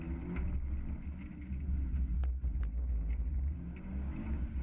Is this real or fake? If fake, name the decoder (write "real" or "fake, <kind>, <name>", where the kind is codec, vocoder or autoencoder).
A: real